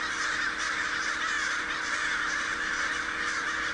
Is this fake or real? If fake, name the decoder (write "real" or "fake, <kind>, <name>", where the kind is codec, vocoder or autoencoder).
real